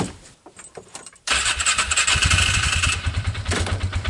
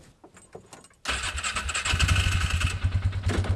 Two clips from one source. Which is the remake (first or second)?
first